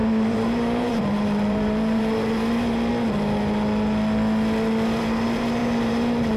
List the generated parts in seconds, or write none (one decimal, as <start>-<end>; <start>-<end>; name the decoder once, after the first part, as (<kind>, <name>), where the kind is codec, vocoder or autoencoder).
0.0-2.9 (vocoder, BigVGAN v2); 5.0-6.4